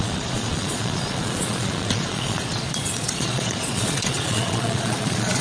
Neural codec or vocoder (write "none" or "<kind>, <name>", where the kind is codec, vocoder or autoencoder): vocoder, Vocos